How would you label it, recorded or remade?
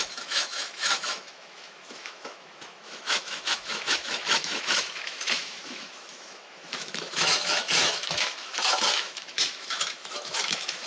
remade